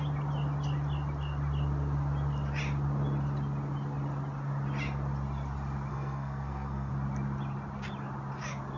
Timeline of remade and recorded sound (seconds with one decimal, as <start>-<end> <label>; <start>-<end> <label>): 0.0-5.9 recorded; 5.9-6.9 remade; 6.9-8.8 recorded